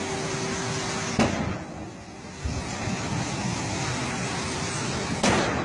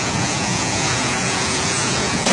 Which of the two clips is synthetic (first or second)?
second